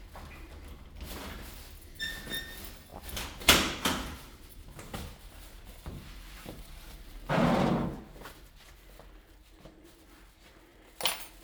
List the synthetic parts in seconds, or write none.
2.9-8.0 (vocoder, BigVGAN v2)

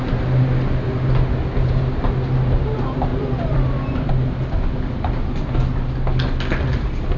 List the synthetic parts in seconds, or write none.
3.1-4.1 (vocoder, BigVGAN v2)

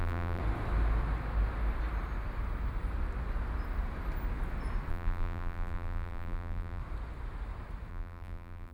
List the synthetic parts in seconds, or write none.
0.0-0.4 (vocoder, BigVGAN v2); 4.9-6.8; 7.9-8.7

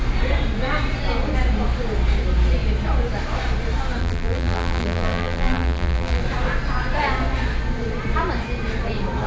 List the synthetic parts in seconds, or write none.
4.0-6.2 (vocoder, BigVGAN v2)

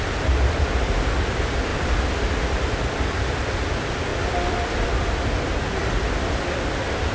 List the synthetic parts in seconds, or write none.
1.7-2.7 (vocoder, BigVGAN v2)

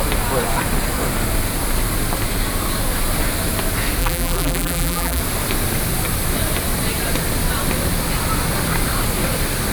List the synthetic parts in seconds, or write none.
4.0-5.2 (vocoder, BigVGAN v2)